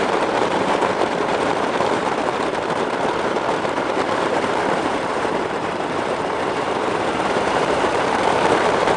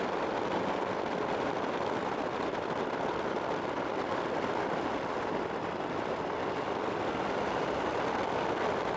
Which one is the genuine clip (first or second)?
second